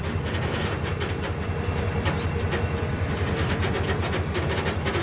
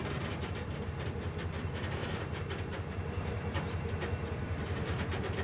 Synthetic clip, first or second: second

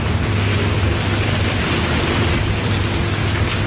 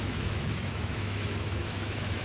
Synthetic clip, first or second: second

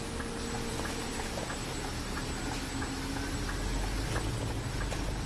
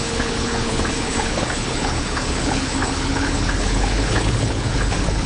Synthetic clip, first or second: second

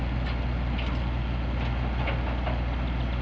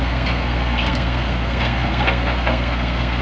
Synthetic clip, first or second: second